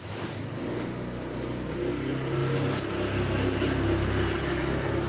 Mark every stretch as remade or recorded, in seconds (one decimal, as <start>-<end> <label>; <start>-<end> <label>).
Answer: 0.0-5.1 recorded